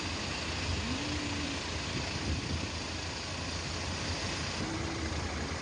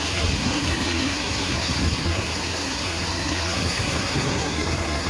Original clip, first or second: first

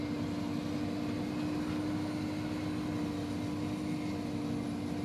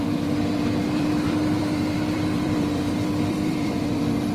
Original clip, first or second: first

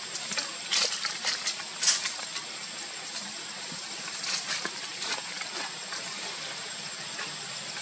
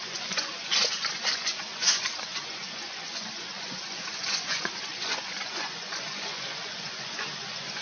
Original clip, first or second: first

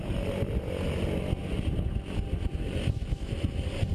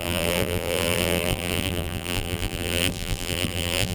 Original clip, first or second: first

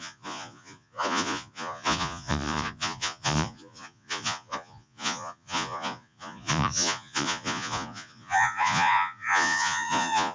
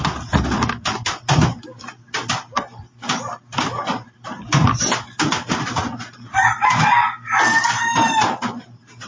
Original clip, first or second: second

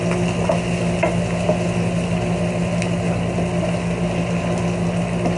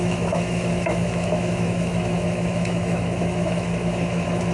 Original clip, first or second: first